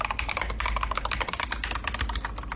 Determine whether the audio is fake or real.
real